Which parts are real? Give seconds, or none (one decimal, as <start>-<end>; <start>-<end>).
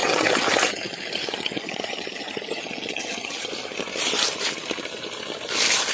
3.5-5.9